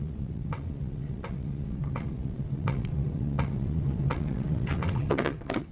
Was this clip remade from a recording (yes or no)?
yes